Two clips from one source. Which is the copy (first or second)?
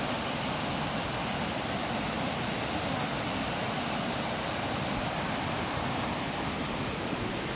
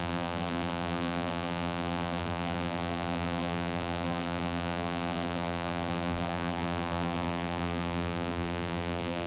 second